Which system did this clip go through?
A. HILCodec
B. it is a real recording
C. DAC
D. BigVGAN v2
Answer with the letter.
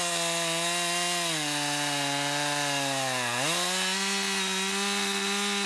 B